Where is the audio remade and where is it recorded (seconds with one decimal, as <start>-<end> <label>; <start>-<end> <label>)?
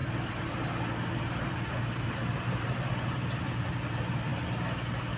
0.0-5.2 recorded